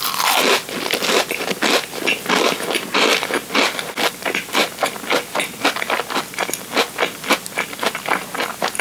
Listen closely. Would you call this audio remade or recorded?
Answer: recorded